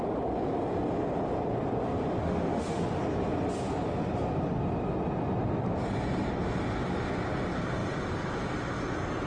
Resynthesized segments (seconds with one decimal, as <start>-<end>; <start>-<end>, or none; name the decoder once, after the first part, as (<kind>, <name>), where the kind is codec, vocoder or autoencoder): 2.2-2.8 (autoencoder, DAC-VAE)